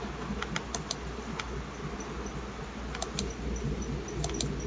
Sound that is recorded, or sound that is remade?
recorded